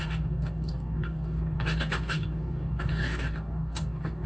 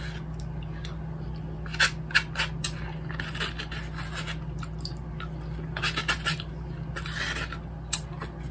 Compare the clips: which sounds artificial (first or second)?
first